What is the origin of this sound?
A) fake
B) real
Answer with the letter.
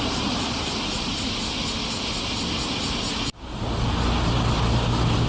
B